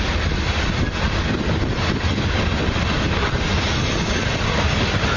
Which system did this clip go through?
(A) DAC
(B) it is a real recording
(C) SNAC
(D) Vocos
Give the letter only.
B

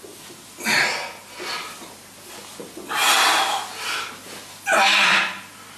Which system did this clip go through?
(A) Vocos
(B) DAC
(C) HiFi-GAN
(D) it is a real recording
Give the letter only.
D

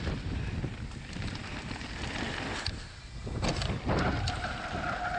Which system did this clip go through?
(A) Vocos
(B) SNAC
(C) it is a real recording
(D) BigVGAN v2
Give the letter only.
C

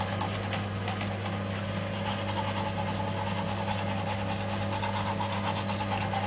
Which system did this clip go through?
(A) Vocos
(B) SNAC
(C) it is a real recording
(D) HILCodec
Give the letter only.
C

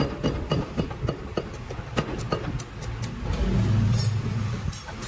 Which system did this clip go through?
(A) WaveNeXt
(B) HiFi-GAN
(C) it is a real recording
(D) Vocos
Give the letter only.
C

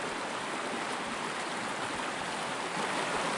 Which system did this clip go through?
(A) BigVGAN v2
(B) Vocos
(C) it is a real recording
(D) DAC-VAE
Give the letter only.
C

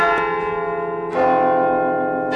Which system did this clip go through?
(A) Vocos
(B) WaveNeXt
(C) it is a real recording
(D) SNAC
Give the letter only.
C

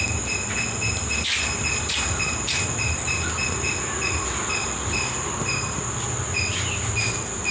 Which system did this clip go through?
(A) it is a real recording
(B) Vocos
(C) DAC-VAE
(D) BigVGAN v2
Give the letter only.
A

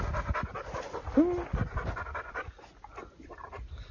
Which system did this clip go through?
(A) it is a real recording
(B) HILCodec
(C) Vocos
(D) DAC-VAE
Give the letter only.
A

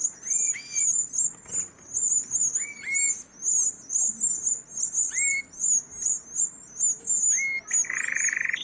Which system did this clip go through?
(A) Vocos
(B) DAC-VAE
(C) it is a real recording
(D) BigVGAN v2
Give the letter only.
C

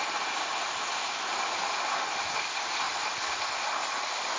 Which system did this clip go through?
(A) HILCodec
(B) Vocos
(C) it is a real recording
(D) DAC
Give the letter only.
C